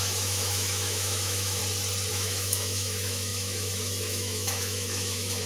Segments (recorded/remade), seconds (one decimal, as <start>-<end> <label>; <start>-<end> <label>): 0.0-1.6 remade; 1.6-2.1 recorded; 2.1-5.5 remade